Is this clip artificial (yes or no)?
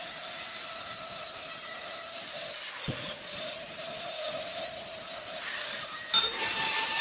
no